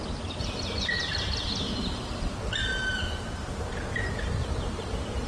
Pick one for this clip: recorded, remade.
recorded